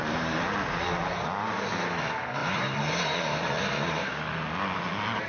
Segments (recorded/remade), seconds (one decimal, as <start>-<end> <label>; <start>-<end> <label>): 0.0-2.4 recorded; 2.4-3.2 remade; 3.2-5.3 recorded